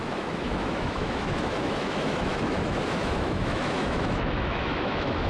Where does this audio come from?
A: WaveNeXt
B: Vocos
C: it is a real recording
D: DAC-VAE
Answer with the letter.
D